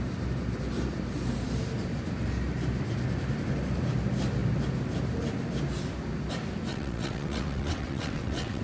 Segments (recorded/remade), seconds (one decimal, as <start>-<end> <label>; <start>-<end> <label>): 0.0-6.7 recorded; 6.7-8.6 remade